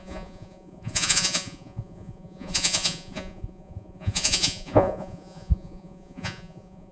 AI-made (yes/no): yes